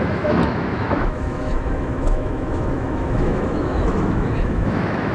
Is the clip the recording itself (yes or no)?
no